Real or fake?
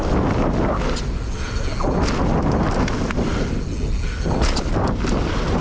real